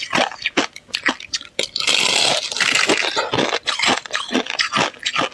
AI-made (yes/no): no